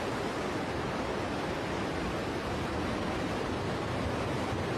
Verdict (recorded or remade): remade